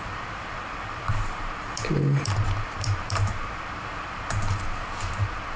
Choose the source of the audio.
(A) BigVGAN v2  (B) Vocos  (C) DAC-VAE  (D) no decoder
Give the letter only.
A